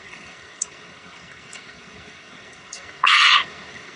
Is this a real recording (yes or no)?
no